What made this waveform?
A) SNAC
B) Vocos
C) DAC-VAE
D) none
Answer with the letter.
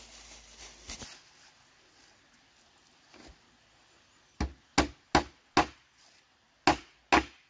D